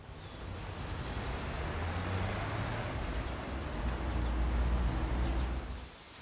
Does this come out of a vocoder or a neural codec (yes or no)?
no